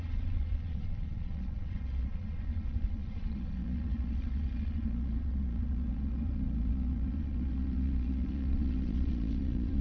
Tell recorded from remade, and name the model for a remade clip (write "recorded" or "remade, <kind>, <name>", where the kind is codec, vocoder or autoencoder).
remade, vocoder, Vocos